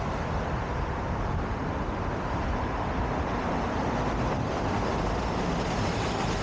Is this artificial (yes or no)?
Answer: yes